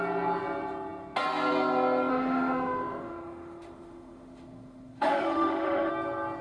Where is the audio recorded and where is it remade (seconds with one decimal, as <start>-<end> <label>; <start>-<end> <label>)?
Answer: 0.0-2.1 recorded; 2.1-5.9 remade; 5.9-6.4 recorded